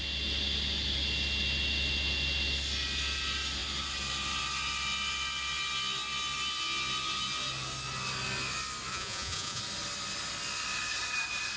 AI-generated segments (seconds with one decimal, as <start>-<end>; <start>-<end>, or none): 8.9-9.6

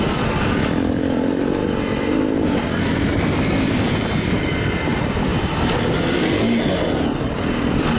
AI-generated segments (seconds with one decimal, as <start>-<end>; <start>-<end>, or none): none

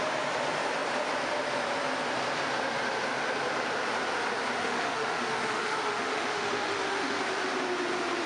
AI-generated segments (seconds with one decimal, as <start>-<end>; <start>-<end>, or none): 4.6-7.2

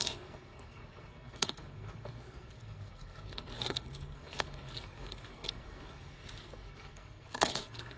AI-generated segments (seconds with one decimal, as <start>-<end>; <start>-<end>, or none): 0.0-8.0

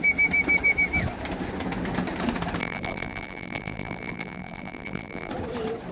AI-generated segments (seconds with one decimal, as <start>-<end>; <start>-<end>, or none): 2.6-5.3

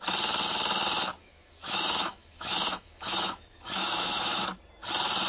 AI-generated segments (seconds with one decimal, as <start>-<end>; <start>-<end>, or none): 1.2-4.4

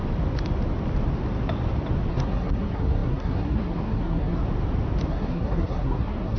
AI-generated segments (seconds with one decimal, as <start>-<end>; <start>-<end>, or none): 2.1-4.4; 5.1-6.4

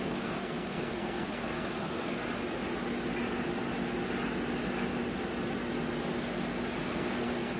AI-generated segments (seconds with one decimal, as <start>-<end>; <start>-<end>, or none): 0.0-2.2; 6.8-7.6